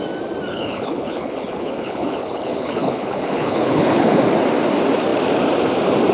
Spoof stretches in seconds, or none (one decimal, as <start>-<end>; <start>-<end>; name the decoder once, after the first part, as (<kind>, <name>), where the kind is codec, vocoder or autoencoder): 0.5-4.2 (codec, HILCodec)